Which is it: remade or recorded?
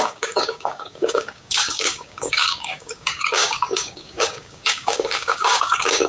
remade